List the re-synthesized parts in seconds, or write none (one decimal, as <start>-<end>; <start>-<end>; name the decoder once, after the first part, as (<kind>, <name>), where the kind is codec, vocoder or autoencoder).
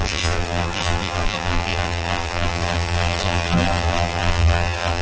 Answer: 0.0-5.0 (vocoder, BigVGAN v2)